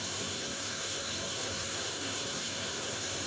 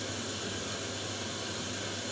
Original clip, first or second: second